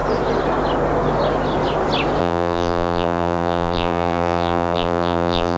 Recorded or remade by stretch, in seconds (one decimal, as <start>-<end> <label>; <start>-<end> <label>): 0.0-2.2 recorded; 2.2-5.6 remade